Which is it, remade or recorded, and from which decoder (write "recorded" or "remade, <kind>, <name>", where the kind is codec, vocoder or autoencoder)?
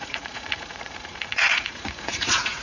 remade, vocoder, Vocos